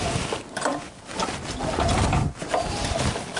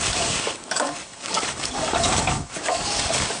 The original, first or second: first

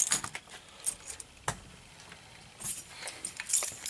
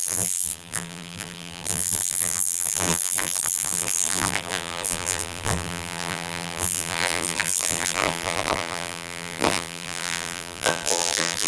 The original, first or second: first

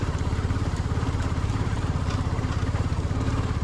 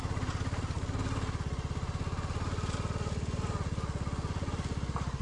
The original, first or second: second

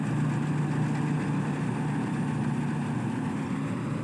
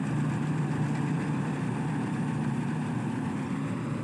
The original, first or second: first